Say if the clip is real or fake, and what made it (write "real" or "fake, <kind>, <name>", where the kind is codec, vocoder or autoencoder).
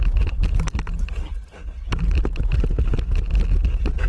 real